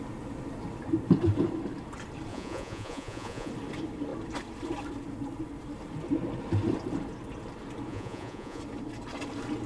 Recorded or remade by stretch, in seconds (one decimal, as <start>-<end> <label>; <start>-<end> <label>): 0.0-2.3 recorded; 2.3-3.5 remade; 3.5-7.9 recorded; 7.9-8.6 remade; 8.6-9.7 recorded